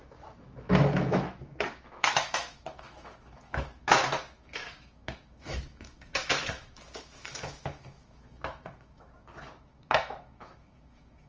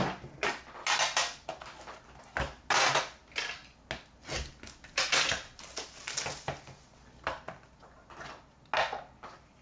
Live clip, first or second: second